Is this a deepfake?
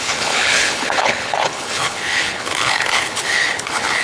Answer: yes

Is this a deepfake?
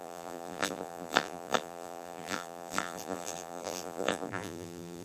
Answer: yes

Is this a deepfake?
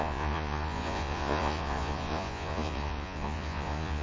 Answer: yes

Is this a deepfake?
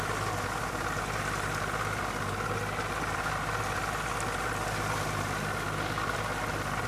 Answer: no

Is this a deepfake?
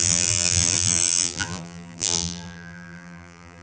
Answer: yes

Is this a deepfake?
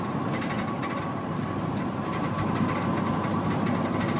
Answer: no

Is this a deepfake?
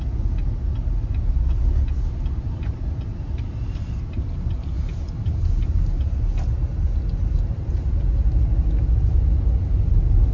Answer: no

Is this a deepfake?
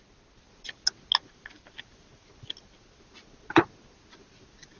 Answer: no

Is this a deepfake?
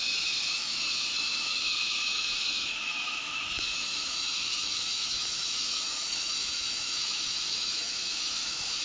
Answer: yes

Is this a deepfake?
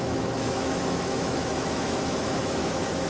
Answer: yes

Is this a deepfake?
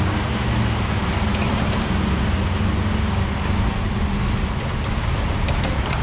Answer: no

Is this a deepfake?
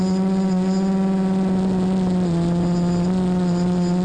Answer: no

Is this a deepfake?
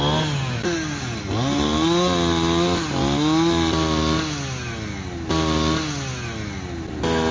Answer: no